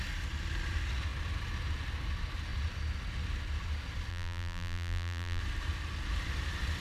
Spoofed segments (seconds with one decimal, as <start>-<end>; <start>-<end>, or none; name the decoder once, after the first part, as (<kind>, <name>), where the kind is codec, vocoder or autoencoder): 4.1-5.4 (vocoder, BigVGAN v2)